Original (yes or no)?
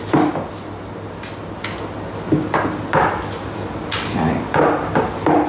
yes